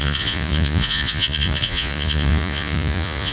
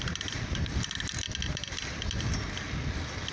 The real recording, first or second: second